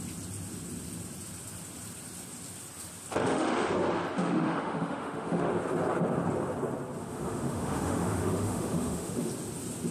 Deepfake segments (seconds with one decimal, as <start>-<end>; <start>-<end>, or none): 3.2-3.7; 4.2-5.5; 7.0-9.3